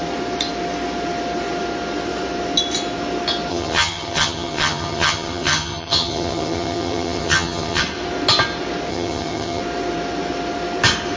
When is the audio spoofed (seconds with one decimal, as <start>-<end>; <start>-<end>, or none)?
3.5-7.8; 8.9-9.6